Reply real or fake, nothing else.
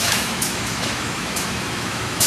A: fake